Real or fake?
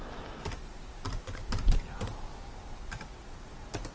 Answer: real